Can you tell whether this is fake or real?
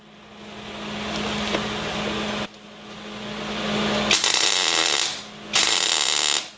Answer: real